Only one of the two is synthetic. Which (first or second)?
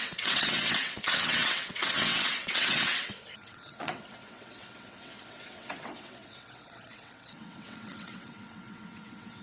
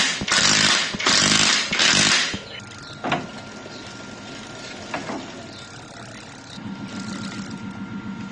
first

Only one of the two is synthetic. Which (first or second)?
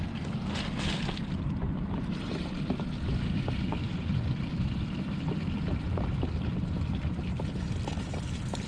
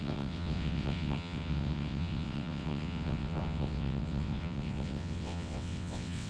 second